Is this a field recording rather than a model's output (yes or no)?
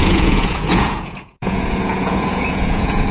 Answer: no